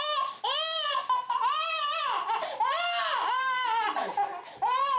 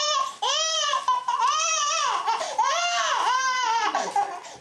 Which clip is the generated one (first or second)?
second